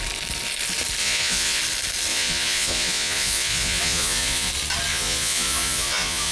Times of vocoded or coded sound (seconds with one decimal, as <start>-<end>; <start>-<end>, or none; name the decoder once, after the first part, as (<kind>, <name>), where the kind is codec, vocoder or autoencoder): 1.0-1.6 (vocoder, Vocos); 2.1-4.5; 4.9-6.3